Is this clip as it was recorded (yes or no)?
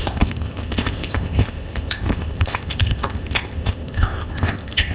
no